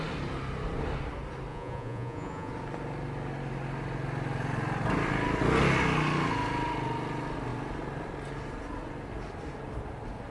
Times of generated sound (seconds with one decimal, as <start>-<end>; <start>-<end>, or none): 1.5-2.5